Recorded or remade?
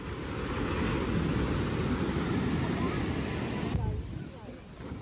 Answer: recorded